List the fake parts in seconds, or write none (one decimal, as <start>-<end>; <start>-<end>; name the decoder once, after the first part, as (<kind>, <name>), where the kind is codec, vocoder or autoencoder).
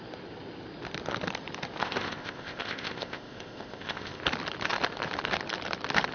1.8-4.2 (codec, ZipCodec)